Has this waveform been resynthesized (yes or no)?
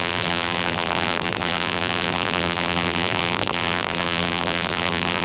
yes